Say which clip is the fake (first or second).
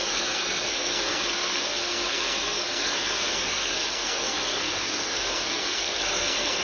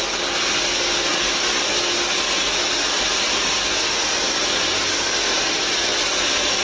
first